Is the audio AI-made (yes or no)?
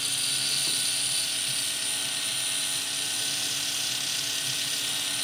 no